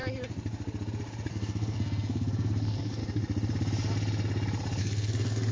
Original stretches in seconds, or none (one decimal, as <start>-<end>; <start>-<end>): 0.0-1.3; 3.0-4.8

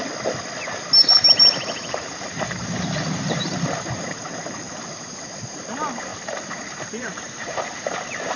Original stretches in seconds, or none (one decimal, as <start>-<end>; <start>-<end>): 0.0-1.0; 5.6-6.1